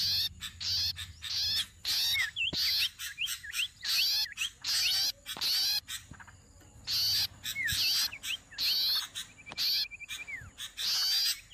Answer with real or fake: real